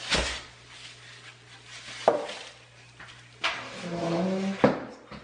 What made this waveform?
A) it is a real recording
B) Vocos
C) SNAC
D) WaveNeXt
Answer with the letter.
A